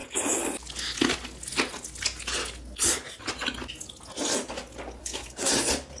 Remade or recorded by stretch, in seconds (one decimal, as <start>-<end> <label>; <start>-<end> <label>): 0.0-5.0 recorded; 5.0-5.5 remade; 5.5-6.0 recorded